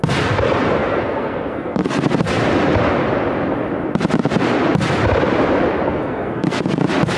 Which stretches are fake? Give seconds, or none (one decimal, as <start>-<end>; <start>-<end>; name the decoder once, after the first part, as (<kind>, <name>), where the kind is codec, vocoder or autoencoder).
0.8-2.0 (codec, SNAC); 5.9-6.8